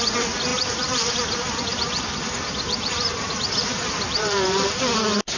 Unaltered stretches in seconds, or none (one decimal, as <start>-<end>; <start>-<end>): 0.0-0.5; 1.1-1.7; 4.9-5.4